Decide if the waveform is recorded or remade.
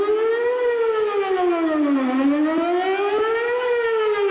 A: recorded